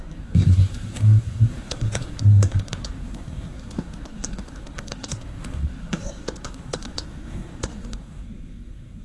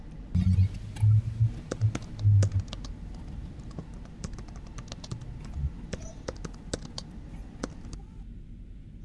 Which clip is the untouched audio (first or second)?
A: second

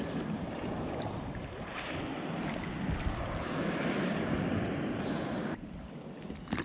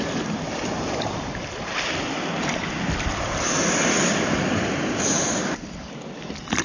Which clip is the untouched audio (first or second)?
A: first